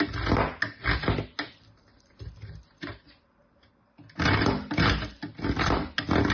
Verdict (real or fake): real